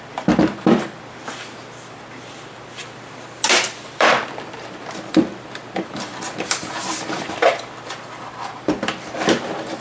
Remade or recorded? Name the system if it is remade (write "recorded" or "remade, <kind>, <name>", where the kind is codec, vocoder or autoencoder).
remade, vocoder, BigVGAN v2